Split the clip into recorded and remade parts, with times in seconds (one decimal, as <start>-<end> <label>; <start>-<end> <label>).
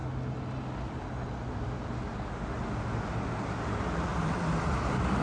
0.0-4.1 recorded; 4.1-5.2 remade